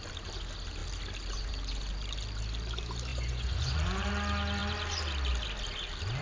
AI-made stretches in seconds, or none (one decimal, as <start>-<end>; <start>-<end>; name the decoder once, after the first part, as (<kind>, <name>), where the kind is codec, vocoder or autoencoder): 3.1-4.1 (vocoder, Vocos)